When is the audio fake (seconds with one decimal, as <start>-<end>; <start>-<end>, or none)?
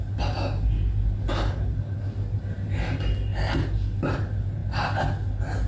none